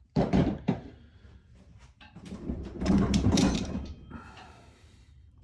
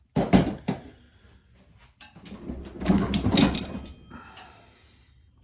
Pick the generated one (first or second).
first